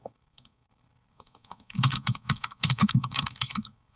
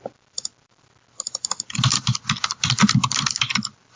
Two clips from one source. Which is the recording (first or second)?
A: second